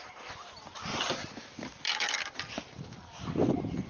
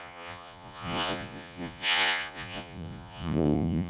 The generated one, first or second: second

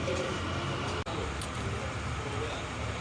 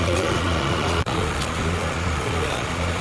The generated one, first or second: second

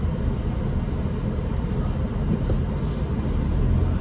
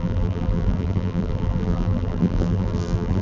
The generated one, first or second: second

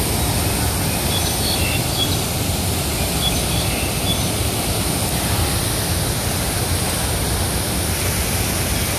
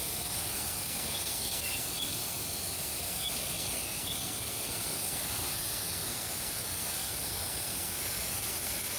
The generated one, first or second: second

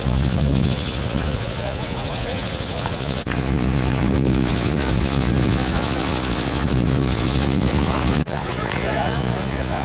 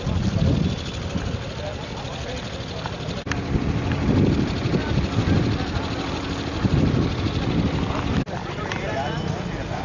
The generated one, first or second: first